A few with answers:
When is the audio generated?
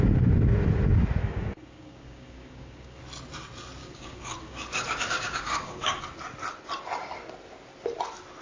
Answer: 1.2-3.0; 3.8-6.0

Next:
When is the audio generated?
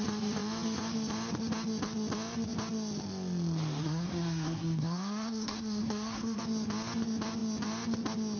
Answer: 3.8-6.4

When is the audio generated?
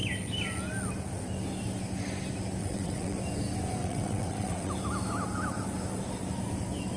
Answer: 2.6-3.2; 3.8-4.7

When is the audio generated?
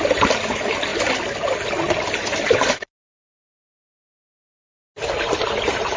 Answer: none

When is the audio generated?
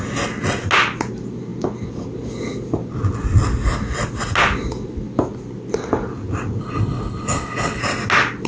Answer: 6.6-7.8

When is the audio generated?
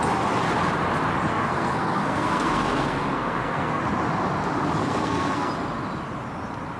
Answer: 1.3-3.8; 4.8-5.5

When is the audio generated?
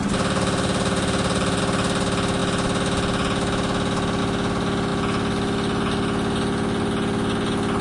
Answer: 0.0-1.6